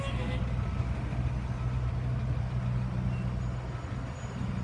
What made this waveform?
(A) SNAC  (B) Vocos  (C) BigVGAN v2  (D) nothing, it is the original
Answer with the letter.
D